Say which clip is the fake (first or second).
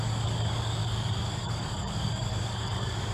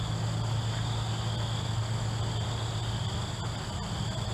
first